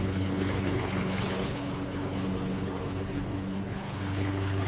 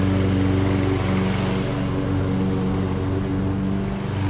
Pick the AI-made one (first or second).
first